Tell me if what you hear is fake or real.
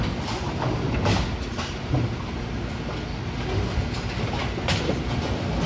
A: real